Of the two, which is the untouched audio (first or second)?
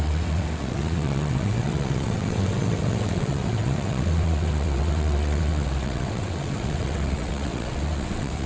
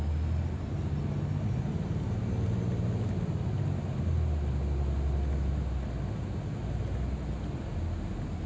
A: second